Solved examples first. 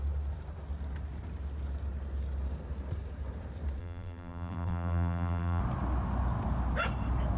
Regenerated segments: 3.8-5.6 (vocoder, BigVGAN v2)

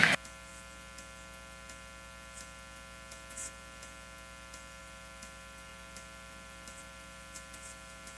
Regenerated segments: 0.0-0.5 (vocoder, BigVGAN v2); 4.8-8.2

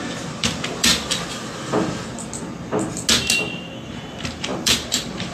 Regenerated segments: 0.0-0.9 (vocoder, BigVGAN v2); 4.1-5.3

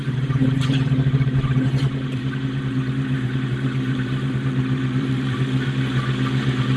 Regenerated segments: 0.0-6.8 (vocoder, BigVGAN v2)

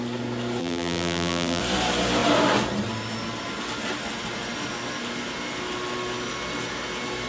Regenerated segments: 0.6-1.6 (vocoder, BigVGAN v2)

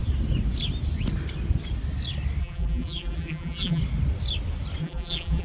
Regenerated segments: 2.4-3.8 (vocoder, BigVGAN v2); 4.8-5.4

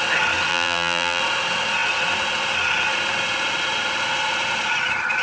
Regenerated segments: 0.5-1.2 (vocoder, BigVGAN v2)

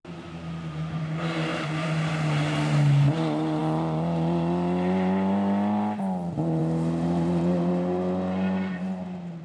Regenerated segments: 1.5-2.1 (vocoder, BigVGAN v2)